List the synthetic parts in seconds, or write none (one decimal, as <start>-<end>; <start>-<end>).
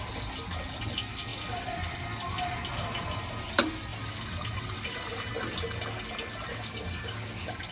6.5-7.7